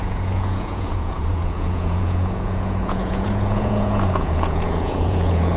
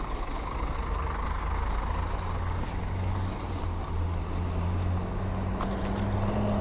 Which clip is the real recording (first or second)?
second